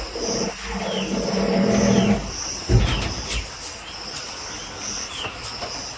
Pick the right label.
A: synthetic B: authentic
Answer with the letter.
B